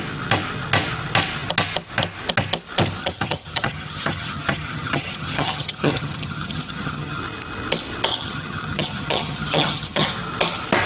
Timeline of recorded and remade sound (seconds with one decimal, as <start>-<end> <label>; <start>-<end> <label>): 0.0-3.0 recorded; 3.0-7.2 remade; 7.2-8.1 recorded; 8.1-10.1 remade; 10.1-10.9 recorded